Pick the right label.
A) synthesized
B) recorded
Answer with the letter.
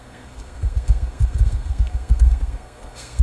A